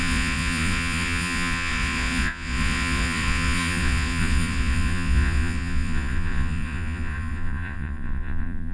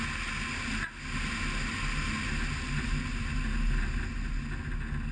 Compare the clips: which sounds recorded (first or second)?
second